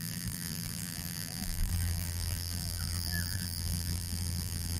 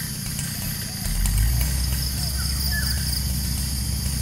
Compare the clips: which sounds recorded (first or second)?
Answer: second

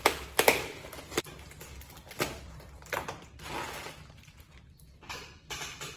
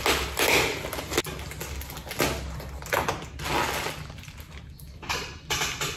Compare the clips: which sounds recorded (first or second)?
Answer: second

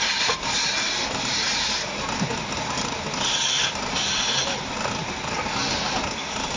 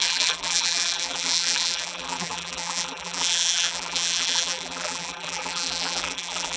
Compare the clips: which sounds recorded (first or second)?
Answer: first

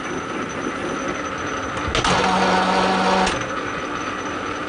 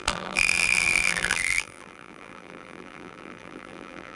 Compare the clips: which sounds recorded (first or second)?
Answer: first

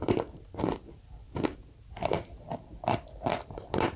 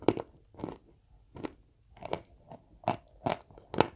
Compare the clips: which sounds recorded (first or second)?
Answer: second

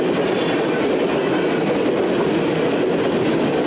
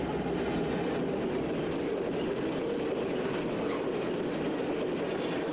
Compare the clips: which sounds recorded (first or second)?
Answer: second